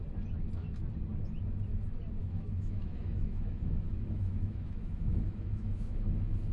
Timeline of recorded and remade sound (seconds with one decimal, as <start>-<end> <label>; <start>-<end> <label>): 0.0-2.2 recorded; 2.2-6.1 remade; 6.1-6.5 recorded